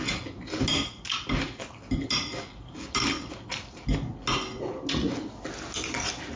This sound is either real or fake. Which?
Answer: real